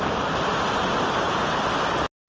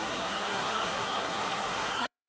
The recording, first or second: first